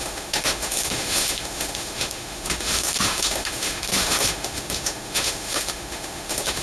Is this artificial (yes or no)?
yes